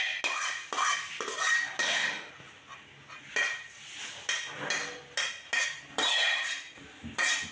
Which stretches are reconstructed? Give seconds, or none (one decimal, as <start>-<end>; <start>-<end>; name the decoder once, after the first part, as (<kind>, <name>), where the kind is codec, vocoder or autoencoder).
1.8-2.3 (autoencoder, DAC-VAE)